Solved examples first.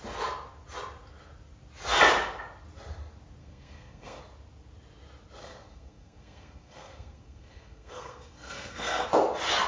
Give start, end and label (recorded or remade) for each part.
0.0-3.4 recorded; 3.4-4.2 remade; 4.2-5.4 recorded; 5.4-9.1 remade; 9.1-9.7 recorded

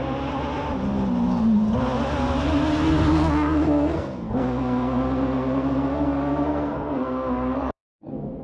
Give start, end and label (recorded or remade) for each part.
0.0-3.1 recorded; 3.1-8.4 remade

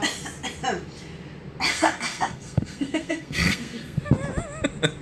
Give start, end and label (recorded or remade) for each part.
0.0-1.7 recorded; 1.7-4.0 remade; 4.0-5.0 recorded